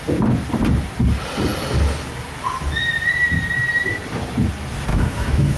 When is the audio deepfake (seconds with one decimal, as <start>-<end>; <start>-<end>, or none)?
4.9-5.6